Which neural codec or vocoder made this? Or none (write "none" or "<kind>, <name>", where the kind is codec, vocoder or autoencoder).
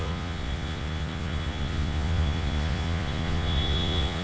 vocoder, Vocos